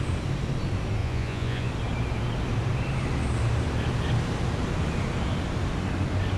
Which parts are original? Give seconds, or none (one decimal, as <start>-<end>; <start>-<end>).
0.0-1.0; 1.7-6.4